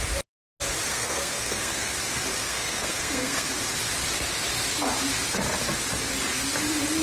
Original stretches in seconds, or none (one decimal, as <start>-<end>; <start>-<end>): 0.0-0.9; 1.9-2.4; 3.5-7.0

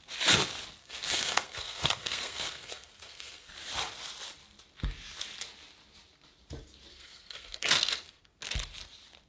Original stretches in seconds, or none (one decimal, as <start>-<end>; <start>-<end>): 0.0-0.8; 3.5-6.9; 8.4-9.3

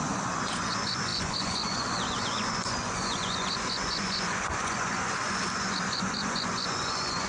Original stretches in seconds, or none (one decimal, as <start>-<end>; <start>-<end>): none

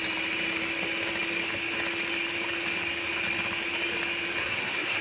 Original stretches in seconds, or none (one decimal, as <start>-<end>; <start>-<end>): 0.0-4.4

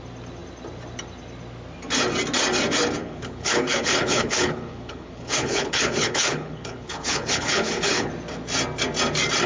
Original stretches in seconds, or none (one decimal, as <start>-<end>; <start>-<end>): 0.0-3.0; 8.1-9.5